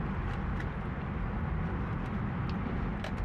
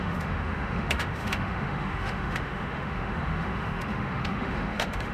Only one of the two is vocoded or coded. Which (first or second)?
second